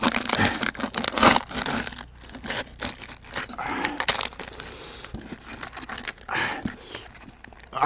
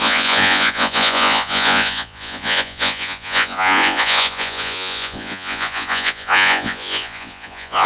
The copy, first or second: second